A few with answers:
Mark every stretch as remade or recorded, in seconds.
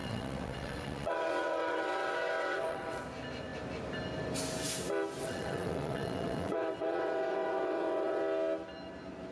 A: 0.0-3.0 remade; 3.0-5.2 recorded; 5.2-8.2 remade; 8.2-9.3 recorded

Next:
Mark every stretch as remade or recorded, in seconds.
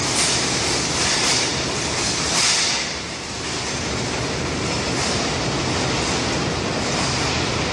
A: 0.0-7.7 recorded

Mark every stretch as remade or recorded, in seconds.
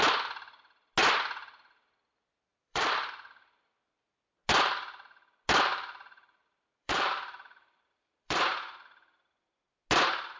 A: 0.0-2.5 recorded; 2.5-3.1 remade; 3.1-5.7 recorded; 5.7-8.4 remade; 8.4-10.4 recorded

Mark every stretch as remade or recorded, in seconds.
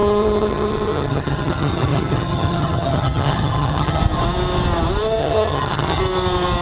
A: 0.0-4.0 remade; 4.0-5.2 recorded; 5.2-6.0 remade; 6.0-6.6 recorded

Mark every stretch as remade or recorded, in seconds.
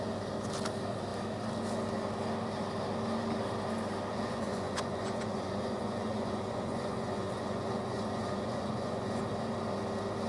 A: 0.0-4.1 recorded; 4.1-9.2 remade; 9.2-10.3 recorded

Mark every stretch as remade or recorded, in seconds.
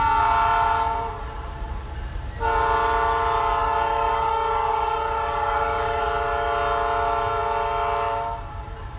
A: 0.0-3.6 recorded; 3.6-6.0 remade; 6.0-9.0 recorded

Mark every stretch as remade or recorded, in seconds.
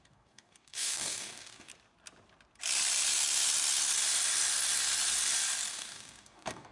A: 0.0-1.7 remade; 1.7-5.7 recorded; 5.7-6.7 remade